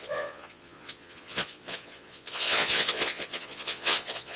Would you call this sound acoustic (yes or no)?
no